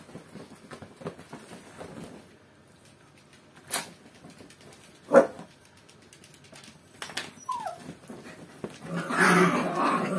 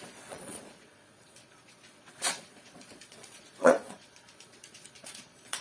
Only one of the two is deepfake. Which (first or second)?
second